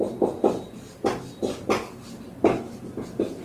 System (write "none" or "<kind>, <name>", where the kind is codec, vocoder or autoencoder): none